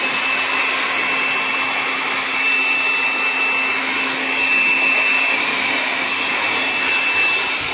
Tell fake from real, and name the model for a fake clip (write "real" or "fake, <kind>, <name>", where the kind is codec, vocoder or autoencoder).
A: real